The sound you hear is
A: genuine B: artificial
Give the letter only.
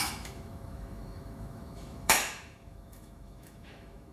B